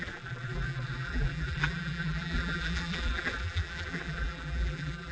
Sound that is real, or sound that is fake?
fake